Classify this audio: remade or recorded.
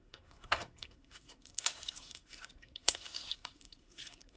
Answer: remade